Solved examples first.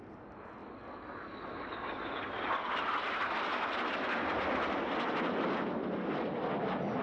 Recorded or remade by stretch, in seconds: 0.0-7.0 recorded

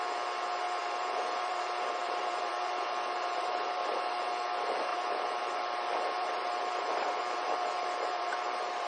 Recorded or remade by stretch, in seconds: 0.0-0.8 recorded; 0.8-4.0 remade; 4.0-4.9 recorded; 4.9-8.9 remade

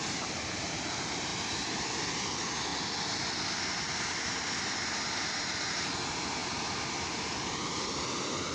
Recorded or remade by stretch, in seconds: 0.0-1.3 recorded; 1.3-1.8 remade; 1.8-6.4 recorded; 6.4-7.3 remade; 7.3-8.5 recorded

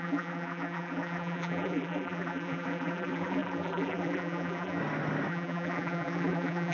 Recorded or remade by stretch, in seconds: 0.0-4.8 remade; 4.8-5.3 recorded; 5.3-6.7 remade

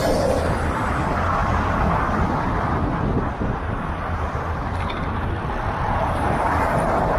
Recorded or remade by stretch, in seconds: 0.0-1.4 remade; 1.4-5.7 recorded; 5.7-7.2 remade

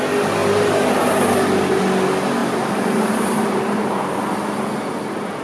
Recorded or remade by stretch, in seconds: 0.0-0.4 recorded; 0.4-1.8 remade; 1.8-2.4 recorded; 2.4-3.9 remade; 3.9-5.4 recorded